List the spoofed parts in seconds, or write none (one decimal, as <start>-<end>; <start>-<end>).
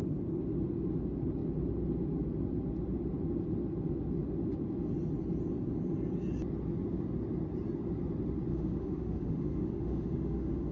8.5-10.7